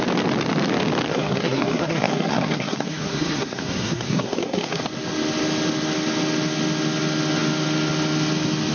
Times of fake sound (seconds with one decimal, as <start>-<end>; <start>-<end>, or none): 1.1-4.8